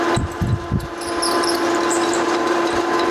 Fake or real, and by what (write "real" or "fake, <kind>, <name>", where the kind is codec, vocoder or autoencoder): real